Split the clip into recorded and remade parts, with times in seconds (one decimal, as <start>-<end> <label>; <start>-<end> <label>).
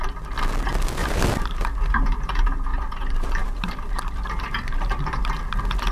0.0-1.0 recorded; 1.0-2.3 remade; 2.3-2.7 recorded; 2.7-5.3 remade; 5.3-5.9 recorded